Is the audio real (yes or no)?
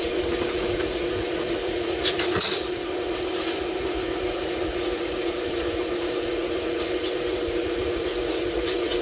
no